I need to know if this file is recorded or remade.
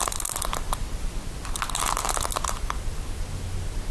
recorded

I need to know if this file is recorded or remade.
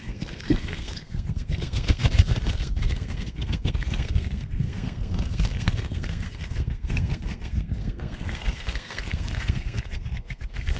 remade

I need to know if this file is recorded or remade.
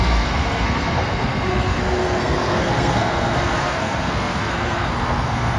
remade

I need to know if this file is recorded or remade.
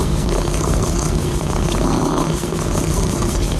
remade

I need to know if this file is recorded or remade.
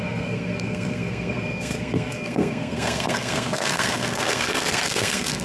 remade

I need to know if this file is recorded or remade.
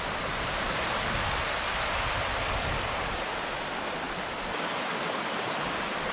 recorded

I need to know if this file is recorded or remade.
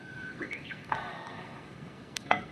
remade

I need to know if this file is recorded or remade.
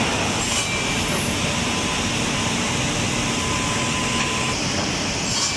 recorded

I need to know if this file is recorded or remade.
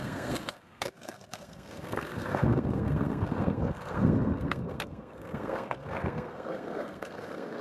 remade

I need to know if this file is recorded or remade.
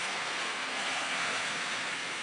remade